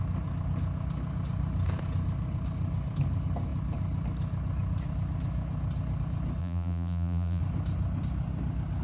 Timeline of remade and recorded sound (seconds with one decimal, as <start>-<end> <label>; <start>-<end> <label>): 0.0-6.4 recorded; 6.4-7.4 remade; 7.4-8.8 recorded